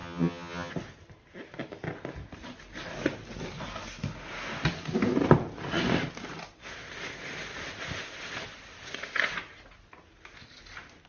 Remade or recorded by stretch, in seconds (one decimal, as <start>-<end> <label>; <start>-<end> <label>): 0.0-0.7 remade; 0.7-11.1 recorded